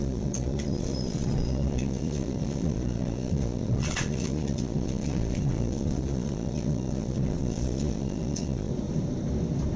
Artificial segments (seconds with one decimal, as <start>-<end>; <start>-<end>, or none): 0.0-8.7